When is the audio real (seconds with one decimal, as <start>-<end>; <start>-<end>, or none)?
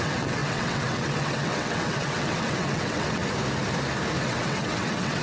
3.2-4.2